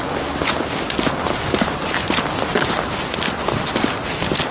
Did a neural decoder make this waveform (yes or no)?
no